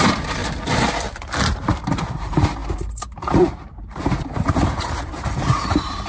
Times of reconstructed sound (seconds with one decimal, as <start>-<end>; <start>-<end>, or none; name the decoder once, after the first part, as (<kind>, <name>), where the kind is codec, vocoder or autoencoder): 0.0-0.4 (vocoder, BigVGAN v2); 1.6-6.1